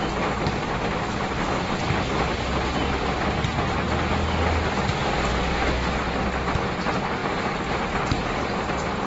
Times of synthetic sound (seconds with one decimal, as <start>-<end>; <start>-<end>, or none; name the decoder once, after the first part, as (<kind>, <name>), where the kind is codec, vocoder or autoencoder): 7.2-7.7 (vocoder, BigVGAN v2)